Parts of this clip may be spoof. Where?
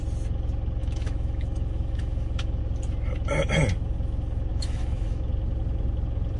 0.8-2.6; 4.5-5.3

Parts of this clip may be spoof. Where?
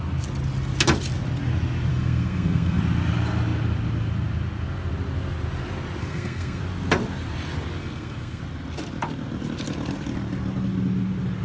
1.9-2.8; 6.0-6.6; 7.8-8.4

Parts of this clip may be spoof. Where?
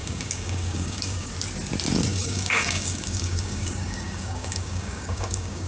0.0-1.3; 2.1-5.7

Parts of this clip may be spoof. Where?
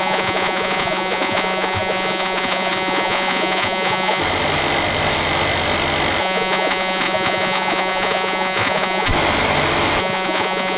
0.0-4.2; 6.2-9.1; 10.0-10.8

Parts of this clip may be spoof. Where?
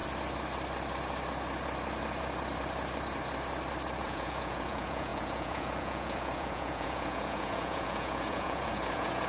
4.0-9.3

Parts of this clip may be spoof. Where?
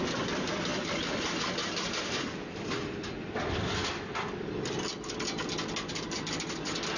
none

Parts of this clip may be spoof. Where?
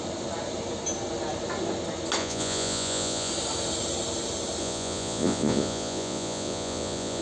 2.2-3.3; 4.6-7.2